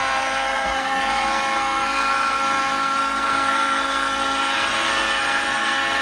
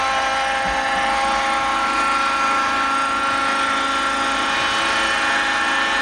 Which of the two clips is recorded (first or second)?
second